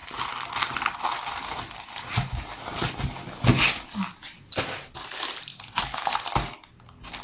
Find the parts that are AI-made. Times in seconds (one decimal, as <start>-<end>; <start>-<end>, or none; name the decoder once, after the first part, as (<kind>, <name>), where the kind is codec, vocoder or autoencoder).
5.5-6.1 (codec, HILCodec)